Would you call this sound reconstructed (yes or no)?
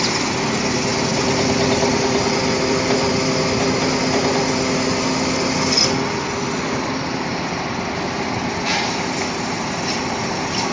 no